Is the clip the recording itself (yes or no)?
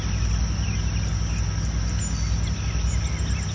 yes